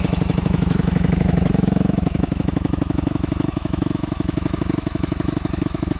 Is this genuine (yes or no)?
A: no